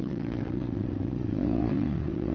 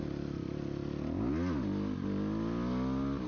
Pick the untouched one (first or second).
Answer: second